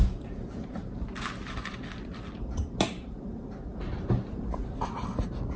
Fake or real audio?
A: real